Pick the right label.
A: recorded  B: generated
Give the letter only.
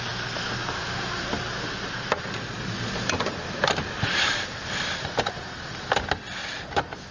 A